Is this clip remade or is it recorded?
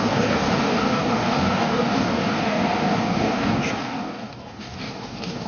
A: remade